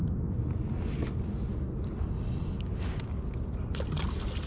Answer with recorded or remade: recorded